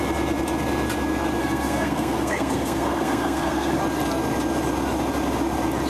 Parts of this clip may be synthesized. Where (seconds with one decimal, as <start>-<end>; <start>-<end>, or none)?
1.4-3.8

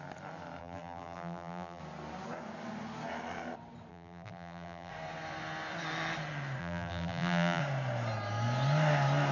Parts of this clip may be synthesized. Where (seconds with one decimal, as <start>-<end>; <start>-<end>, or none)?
0.6-1.8; 3.9-4.9; 6.6-7.6

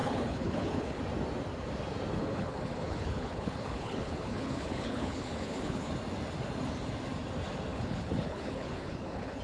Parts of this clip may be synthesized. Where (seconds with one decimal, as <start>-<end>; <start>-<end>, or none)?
0.0-1.0; 2.2-5.9; 7.7-9.4

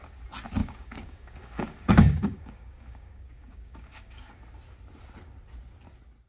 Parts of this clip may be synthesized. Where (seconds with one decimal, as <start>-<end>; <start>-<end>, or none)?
0.6-4.3